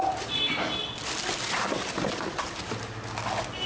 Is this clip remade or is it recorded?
recorded